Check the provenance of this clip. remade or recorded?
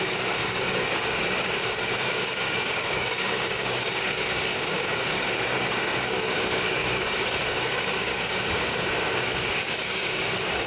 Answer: remade